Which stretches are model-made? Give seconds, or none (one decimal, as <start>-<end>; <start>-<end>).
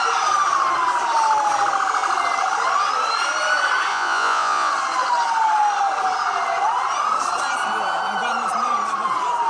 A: 3.9-4.7